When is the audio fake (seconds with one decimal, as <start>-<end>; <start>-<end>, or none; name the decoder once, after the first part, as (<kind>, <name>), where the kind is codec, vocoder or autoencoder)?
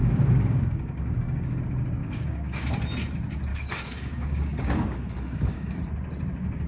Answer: 0.0-1.6 (codec, DAC); 2.0-2.7; 3.5-5.8